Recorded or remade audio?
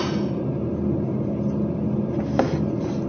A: recorded